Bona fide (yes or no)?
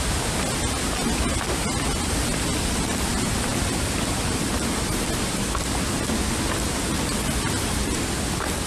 yes